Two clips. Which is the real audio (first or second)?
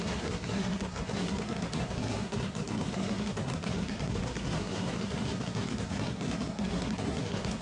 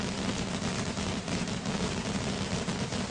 second